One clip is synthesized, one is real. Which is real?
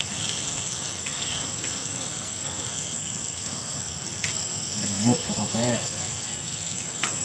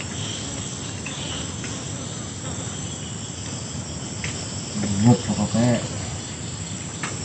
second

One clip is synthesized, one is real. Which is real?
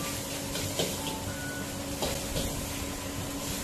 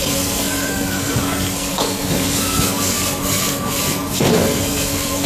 first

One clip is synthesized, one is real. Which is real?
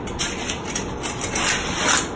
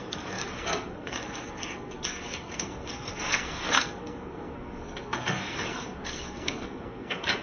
first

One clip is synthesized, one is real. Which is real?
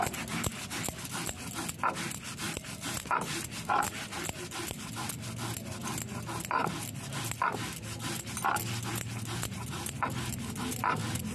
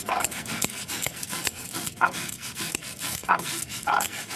first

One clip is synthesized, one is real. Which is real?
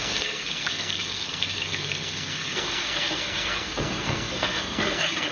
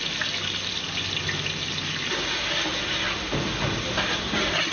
second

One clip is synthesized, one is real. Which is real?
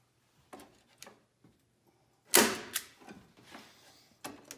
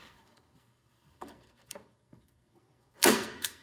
first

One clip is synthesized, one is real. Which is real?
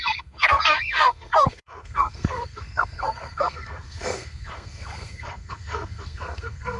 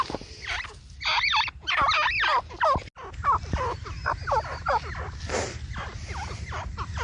second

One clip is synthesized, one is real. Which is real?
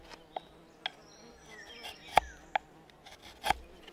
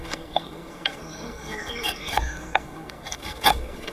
first